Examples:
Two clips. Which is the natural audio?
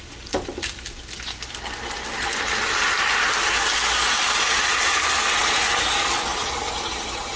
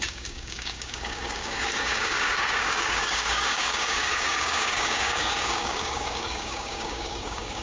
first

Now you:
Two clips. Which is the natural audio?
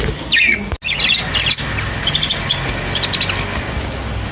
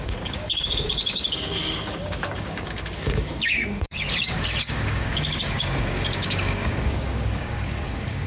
first